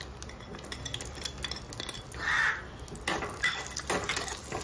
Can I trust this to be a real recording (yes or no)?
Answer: yes